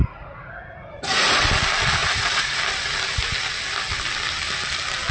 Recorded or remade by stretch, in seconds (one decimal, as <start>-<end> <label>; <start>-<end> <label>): 0.0-1.4 remade; 1.4-2.0 recorded; 2.0-2.6 remade; 2.6-5.1 recorded